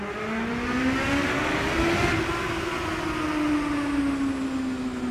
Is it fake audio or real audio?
real